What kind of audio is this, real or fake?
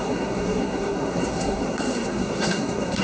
fake